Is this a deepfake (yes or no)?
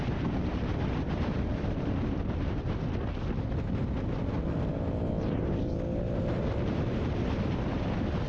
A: no